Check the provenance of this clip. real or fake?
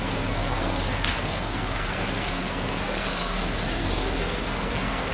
fake